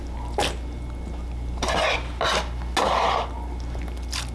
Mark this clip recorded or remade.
recorded